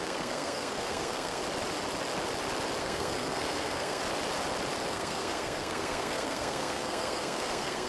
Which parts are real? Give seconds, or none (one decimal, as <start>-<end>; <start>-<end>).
1.4-2.8; 4.0-4.9